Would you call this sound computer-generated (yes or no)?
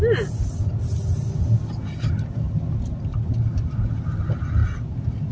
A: no